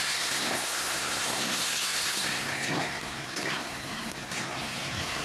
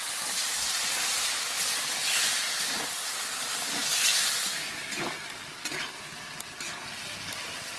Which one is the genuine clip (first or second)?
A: second